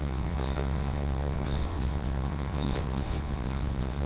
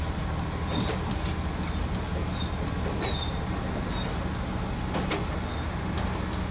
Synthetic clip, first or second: first